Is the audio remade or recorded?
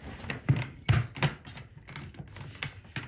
recorded